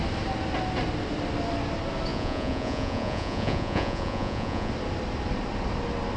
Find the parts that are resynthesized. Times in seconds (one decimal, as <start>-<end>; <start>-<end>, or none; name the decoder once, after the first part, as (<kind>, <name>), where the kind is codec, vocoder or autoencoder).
2.1-4.7 (vocoder, Vocos)